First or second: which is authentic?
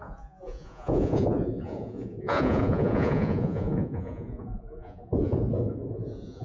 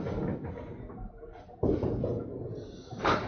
second